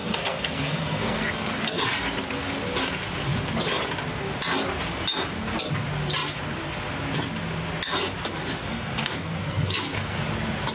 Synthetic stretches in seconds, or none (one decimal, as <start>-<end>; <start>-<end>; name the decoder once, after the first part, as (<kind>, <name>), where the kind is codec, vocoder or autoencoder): 0.0-1.8 (codec, SNAC); 8.6-10.2